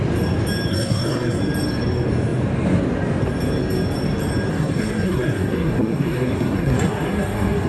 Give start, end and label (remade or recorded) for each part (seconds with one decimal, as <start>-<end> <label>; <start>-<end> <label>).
0.0-0.7 recorded; 0.7-1.4 remade; 1.4-4.5 recorded; 4.5-7.7 remade